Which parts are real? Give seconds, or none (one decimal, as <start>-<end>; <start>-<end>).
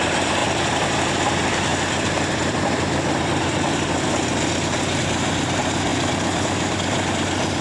0.0-1.7; 4.5-5.9